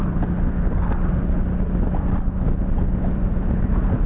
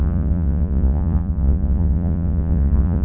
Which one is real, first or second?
first